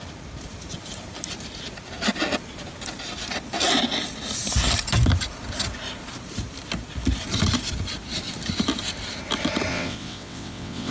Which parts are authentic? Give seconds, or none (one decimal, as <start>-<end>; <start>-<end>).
0.0-9.7